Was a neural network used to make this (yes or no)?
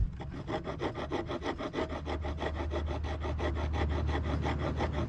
no